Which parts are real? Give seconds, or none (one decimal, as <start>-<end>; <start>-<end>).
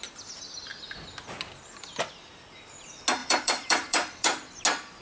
0.0-3.2; 4.6-5.0